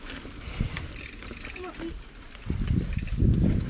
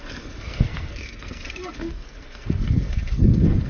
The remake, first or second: second